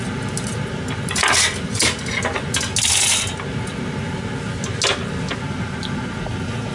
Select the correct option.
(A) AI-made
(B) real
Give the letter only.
B